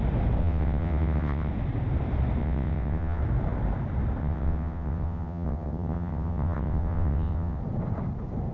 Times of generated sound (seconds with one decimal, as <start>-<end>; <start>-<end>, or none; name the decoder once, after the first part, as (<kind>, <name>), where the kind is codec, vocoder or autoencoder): 0.4-1.5 (vocoder, WaveNeXt); 2.4-3.2; 4.2-7.6